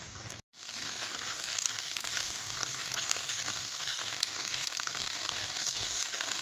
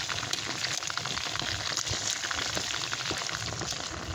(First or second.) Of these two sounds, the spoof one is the first